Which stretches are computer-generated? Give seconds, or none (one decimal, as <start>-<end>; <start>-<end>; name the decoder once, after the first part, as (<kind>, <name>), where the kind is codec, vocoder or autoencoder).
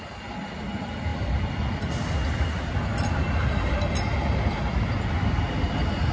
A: none